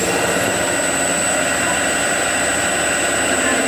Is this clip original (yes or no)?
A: yes